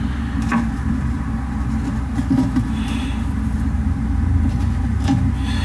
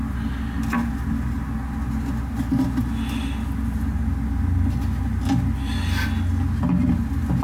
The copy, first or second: first